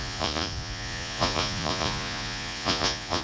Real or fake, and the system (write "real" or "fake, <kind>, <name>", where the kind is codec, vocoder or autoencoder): fake, vocoder, Vocos